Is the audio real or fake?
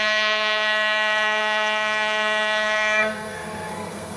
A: fake